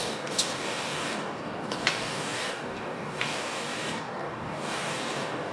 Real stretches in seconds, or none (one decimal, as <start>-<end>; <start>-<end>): none